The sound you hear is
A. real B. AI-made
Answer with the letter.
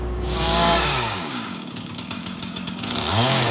B